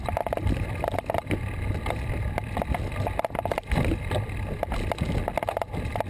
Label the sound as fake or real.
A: real